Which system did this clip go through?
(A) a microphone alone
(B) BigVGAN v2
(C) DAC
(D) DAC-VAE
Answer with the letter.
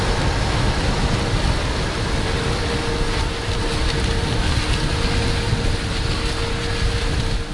A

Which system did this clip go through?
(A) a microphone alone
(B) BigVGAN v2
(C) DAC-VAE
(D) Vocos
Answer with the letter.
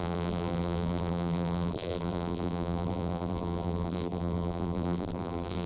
B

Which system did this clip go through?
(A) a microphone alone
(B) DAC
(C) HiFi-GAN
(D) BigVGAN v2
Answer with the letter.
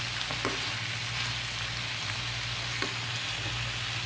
A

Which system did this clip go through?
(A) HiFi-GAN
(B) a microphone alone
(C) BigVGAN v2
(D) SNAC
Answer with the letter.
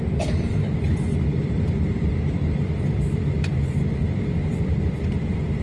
C